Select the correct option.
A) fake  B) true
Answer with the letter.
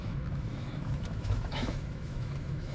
A